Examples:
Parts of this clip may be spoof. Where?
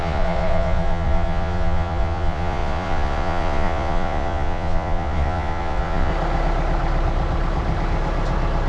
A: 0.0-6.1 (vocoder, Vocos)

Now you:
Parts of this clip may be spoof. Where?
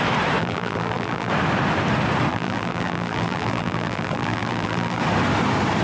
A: 0.4-1.3 (vocoder, BigVGAN v2); 2.3-5.0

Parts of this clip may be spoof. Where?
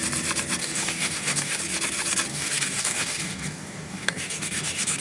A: 0.6-1.6 (codec, DAC); 2.3-5.0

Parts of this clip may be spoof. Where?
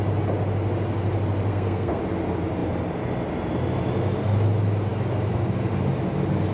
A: 1.5-2.0 (codec, SNAC)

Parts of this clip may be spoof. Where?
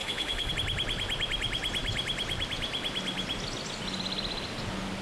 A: 0.0-0.5 (autoencoder, DAC-VAE)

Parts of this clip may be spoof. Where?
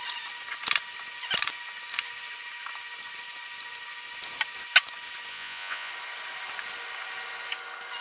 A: 5.3-5.9 (vocoder, Vocos)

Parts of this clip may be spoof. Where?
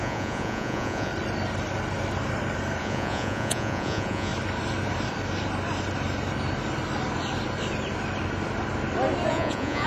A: 0.0-1.1 (vocoder, Vocos); 2.8-4.3; 9.3-9.9